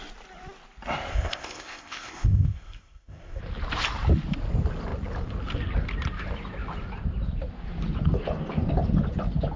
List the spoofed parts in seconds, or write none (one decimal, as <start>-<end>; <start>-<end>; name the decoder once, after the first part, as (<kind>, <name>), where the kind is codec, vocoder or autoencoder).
1.1-3.4 (codec, ZipCodec)